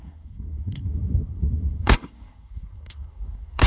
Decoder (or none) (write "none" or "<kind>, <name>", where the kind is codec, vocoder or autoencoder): codec, SNAC